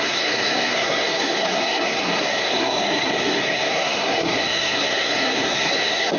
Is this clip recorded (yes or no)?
no